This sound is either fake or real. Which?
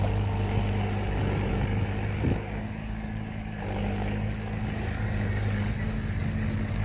fake